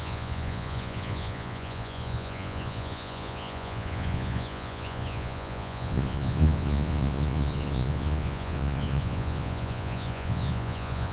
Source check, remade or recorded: remade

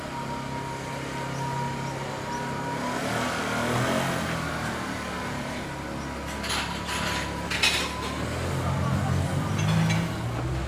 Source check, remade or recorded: recorded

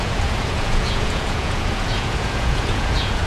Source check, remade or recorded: remade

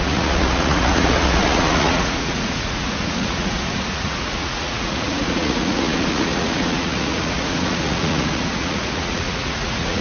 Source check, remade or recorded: remade